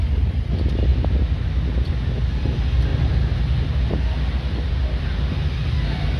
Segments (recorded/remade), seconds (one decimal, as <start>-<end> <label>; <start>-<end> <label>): 0.0-6.2 recorded